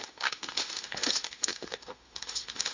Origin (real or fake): fake